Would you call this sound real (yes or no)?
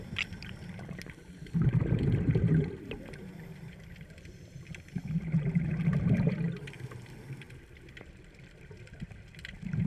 yes